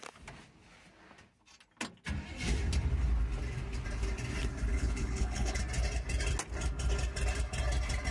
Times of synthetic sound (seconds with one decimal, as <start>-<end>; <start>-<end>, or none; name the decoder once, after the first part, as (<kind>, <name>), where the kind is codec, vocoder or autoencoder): 4.7-5.6 (codec, HILCodec)